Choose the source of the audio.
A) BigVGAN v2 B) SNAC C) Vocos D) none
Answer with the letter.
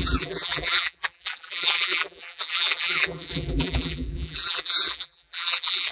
A